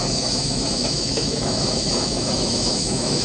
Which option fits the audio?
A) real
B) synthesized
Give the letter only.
B